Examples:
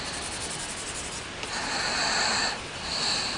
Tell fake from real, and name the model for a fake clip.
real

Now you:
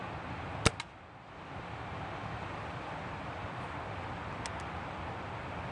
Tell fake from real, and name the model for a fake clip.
real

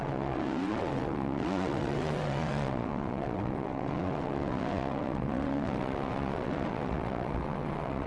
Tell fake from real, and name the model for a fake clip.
fake, vocoder, WaveNeXt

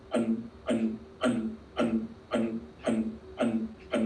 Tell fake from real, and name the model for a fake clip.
real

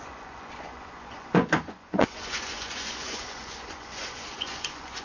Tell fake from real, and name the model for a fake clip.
fake, vocoder, Vocos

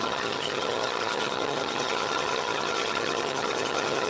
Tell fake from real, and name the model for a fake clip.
fake, vocoder, HiFi-GAN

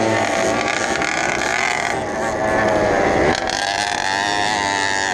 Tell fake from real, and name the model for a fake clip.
real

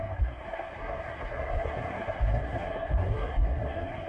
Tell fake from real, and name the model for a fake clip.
fake, codec, SNAC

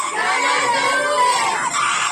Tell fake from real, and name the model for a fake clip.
real